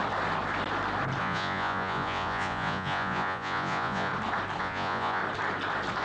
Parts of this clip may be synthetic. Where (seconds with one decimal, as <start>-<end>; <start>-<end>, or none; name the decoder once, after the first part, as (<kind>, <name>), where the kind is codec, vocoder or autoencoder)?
1.2-4.1 (vocoder, Vocos); 4.6-5.2